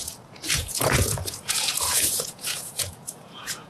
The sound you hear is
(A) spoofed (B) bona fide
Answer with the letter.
A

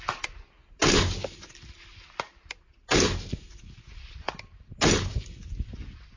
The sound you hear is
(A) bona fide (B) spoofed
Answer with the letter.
A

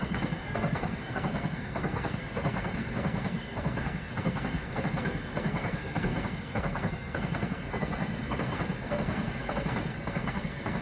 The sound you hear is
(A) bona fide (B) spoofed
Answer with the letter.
B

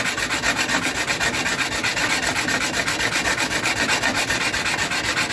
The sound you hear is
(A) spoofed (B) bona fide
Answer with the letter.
B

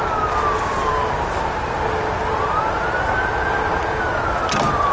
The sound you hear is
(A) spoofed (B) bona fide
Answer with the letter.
B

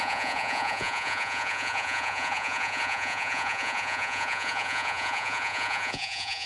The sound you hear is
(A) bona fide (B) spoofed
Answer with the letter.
B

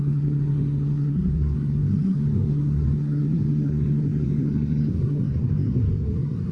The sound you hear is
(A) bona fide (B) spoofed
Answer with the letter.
B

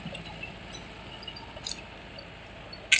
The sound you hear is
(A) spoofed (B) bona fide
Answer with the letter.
B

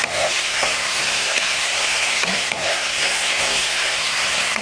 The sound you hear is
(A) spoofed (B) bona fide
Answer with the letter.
A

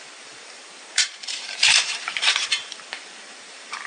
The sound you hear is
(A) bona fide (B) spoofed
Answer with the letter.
B